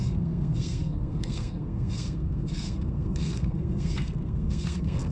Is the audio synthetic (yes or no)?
yes